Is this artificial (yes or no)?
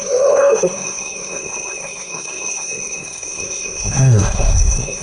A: yes